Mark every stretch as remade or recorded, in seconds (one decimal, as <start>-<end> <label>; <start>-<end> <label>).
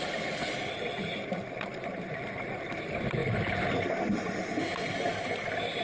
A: 0.0-1.7 recorded; 1.7-2.5 remade; 2.5-5.8 recorded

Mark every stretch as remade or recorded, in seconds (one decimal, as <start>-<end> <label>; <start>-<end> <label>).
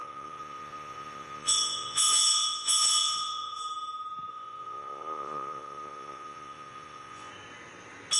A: 0.0-3.6 remade; 3.6-4.3 recorded; 4.3-7.3 remade; 7.3-8.2 recorded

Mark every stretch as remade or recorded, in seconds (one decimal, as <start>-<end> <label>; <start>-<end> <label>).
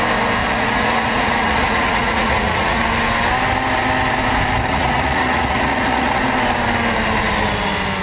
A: 0.0-0.4 recorded; 0.4-2.8 remade; 2.8-4.7 recorded; 4.7-6.2 remade; 6.2-8.0 recorded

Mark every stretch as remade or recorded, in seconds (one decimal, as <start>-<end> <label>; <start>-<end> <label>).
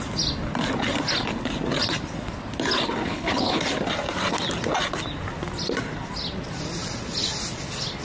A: 0.0-3.0 recorded; 3.0-3.6 remade; 3.6-8.0 recorded